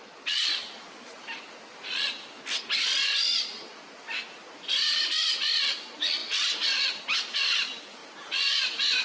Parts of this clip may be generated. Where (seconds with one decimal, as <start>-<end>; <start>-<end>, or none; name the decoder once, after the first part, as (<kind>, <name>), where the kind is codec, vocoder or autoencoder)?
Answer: none